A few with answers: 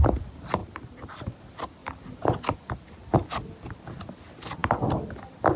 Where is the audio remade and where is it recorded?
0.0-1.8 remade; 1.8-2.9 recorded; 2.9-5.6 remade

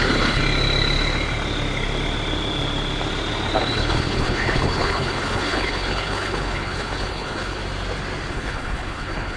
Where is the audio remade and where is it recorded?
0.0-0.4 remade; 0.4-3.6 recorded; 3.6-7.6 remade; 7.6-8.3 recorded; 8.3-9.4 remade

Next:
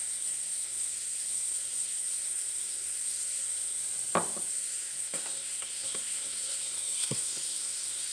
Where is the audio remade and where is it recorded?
0.0-3.8 remade; 3.8-4.5 recorded; 4.5-8.1 remade

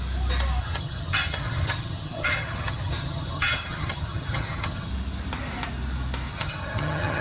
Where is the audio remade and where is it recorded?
0.0-0.6 recorded; 0.6-4.9 remade; 4.9-6.3 recorded; 6.3-7.2 remade